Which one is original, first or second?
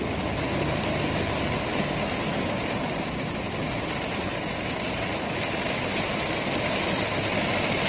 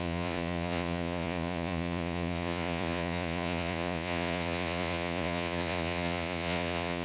first